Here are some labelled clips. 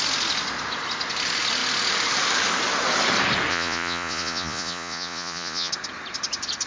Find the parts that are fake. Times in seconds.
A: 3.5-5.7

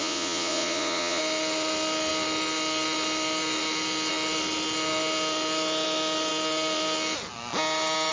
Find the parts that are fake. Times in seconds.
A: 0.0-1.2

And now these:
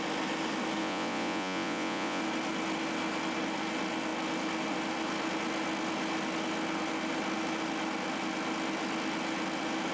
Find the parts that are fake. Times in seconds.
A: 0.8-2.2